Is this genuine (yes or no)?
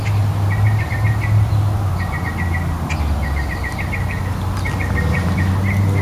yes